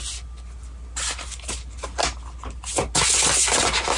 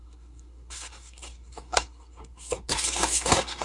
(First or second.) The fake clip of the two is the second